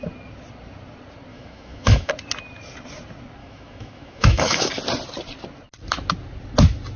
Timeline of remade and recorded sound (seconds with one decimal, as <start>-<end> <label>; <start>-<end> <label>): 0.0-1.3 recorded; 1.3-2.1 remade; 2.1-3.4 recorded; 3.4-4.7 remade; 4.7-7.0 recorded